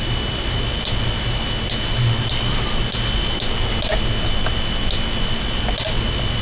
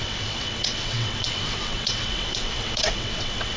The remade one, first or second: second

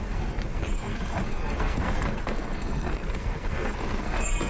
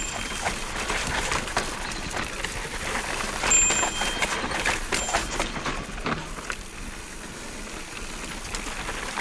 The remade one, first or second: first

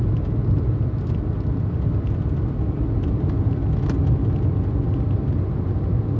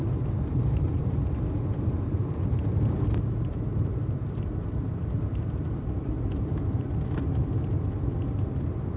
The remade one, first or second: second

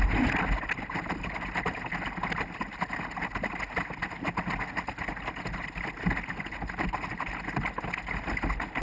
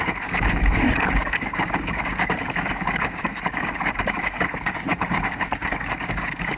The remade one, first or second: second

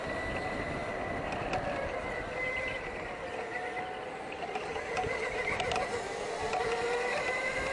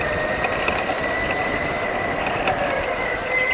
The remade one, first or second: second